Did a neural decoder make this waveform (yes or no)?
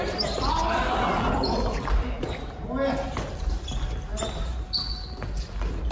no